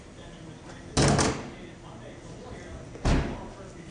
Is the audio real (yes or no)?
yes